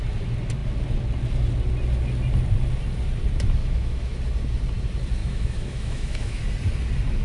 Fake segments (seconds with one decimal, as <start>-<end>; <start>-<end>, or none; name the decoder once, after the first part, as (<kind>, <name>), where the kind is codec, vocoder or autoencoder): 3.6-4.2 (autoencoder, DAC-VAE); 5.2-6.4